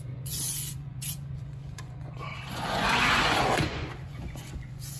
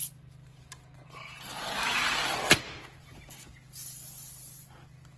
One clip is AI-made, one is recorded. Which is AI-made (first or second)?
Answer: first